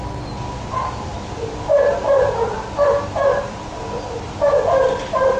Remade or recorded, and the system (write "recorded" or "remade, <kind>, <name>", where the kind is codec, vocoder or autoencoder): remade, vocoder, BigVGAN v2